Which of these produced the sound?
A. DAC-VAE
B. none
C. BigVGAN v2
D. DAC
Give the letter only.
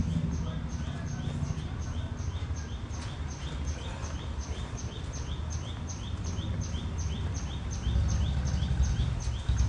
B